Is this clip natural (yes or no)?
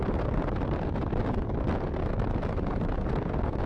yes